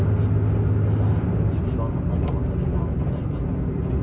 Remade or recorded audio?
recorded